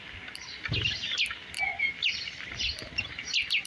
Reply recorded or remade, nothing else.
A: recorded